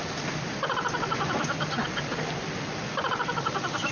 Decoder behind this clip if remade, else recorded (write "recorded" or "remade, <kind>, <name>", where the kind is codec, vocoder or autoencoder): recorded